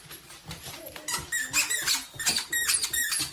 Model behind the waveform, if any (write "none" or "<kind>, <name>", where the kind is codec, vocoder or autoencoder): none